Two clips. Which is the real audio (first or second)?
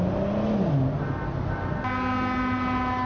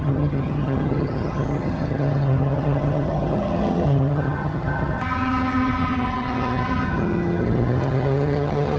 first